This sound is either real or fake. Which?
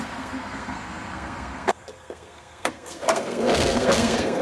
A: fake